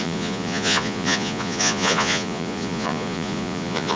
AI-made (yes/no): yes